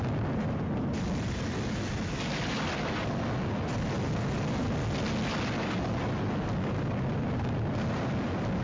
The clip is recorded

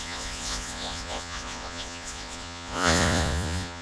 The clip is remade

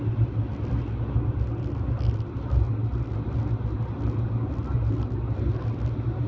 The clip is recorded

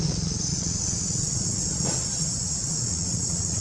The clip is remade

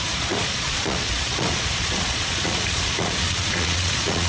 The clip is remade